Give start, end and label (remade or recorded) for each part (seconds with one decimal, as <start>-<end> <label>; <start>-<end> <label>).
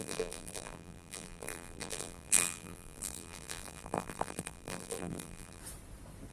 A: 0.0-5.6 remade; 5.6-6.3 recorded